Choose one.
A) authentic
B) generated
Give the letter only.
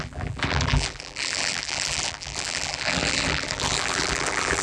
B